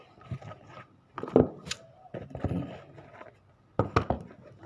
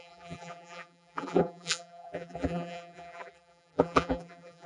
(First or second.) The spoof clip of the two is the second